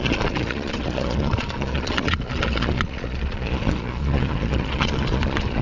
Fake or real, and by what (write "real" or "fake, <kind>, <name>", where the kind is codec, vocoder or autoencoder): fake, vocoder, Vocos